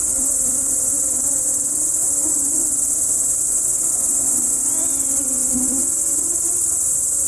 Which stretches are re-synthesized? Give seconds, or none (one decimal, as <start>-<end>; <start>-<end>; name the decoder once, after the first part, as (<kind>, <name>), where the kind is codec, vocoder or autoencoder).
2.2-4.6 (vocoder, Vocos)